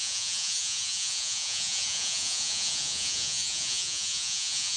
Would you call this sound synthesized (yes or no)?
yes